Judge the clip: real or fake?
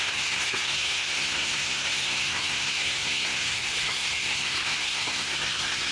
fake